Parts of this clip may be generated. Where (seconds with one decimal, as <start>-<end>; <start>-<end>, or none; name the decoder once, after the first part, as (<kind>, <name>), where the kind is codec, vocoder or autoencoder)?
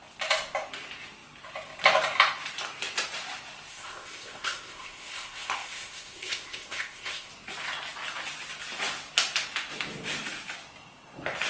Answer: 3.7-7.3 (codec, ZipCodec)